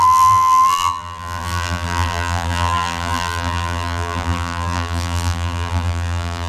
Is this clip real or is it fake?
fake